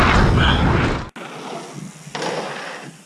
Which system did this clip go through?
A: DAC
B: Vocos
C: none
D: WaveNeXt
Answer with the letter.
C